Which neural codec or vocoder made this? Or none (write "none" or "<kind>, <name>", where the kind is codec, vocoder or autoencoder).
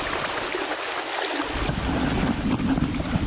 none